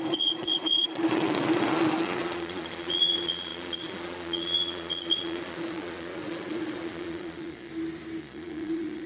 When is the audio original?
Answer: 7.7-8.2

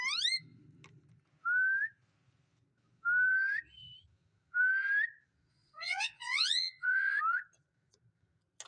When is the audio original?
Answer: 0.0-5.5; 7.2-8.7

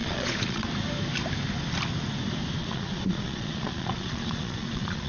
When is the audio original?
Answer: 0.7-2.6

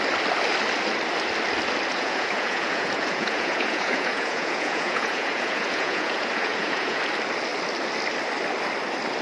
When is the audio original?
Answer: 0.0-1.9; 7.0-9.2

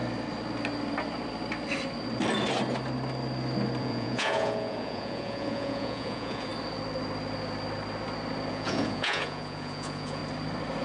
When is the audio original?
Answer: 0.0-3.8; 6.5-8.5; 10.2-10.8

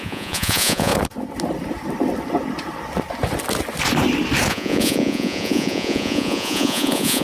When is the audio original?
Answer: 0.9-4.5

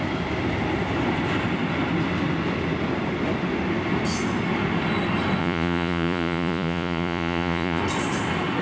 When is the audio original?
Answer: 0.0-5.4; 7.8-8.6

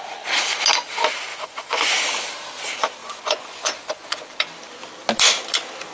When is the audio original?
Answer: 0.0-1.3; 1.9-3.0; 4.2-5.9